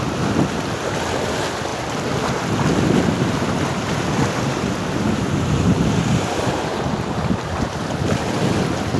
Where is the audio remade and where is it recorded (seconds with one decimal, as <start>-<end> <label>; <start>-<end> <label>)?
0.0-9.0 recorded